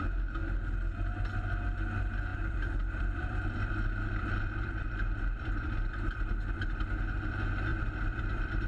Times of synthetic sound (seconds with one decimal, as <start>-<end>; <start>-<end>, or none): 2.3-7.0; 7.7-8.7